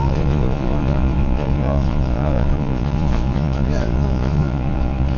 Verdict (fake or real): fake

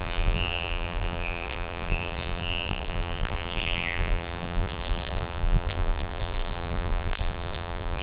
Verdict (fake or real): fake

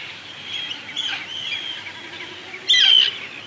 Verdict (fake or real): real